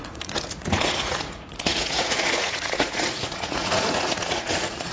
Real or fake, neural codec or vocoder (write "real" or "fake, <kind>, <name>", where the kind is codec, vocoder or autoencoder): fake, vocoder, Vocos